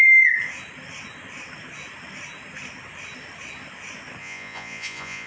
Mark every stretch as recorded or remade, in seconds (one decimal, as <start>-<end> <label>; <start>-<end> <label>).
0.0-4.2 recorded; 4.2-5.3 remade

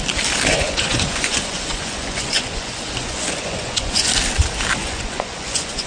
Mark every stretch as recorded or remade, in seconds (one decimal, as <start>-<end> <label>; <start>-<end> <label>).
0.0-0.6 recorded; 0.6-4.1 remade; 4.1-4.8 recorded; 4.8-5.9 remade

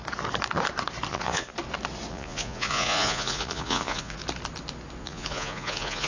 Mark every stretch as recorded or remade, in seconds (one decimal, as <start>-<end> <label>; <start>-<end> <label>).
0.0-1.1 recorded; 1.1-1.5 remade; 1.5-2.1 recorded; 2.1-4.2 remade; 4.2-5.0 recorded; 5.0-6.1 remade

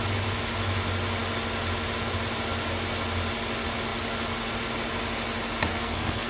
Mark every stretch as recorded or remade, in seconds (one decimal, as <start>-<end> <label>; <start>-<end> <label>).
0.0-5.7 recorded; 5.7-6.3 remade